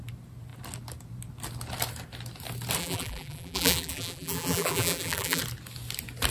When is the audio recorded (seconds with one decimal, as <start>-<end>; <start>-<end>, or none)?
0.0-2.8; 5.4-6.3

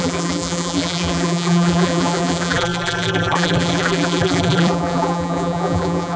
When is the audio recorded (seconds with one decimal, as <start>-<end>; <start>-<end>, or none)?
none

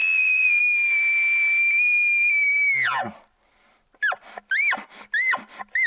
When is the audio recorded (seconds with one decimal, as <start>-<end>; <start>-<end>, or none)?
0.6-5.9

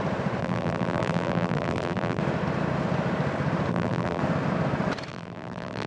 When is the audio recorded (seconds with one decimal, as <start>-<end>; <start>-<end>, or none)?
0.0-0.4; 2.2-3.7; 4.2-5.1

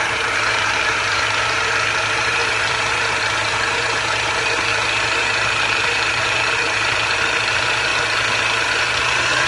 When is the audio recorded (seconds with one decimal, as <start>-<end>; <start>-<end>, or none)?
4.7-5.6; 7.9-8.8

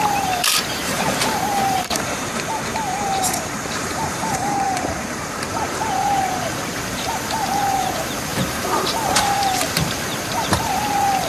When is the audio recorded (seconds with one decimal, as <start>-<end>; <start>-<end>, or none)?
none

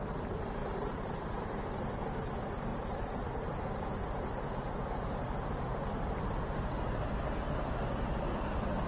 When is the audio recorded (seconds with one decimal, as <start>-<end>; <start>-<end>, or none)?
0.0-0.6; 1.4-2.7; 3.2-8.9